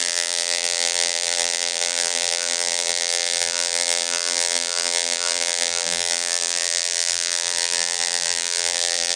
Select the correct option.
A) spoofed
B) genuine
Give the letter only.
A